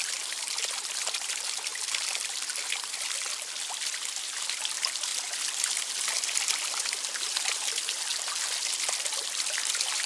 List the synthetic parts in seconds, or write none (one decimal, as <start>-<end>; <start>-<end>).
0.0-5.1; 5.7-8.1